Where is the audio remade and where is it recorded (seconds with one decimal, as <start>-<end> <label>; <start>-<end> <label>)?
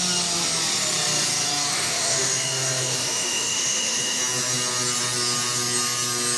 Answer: 0.0-1.7 recorded; 1.7-4.2 remade; 4.2-6.4 recorded